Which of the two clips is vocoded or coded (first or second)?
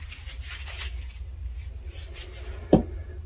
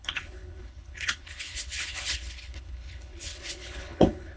second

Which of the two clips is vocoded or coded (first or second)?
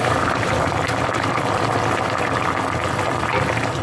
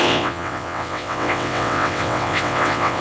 second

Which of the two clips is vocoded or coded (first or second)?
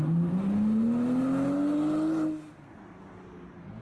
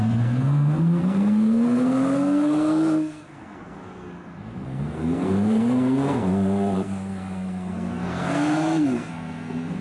second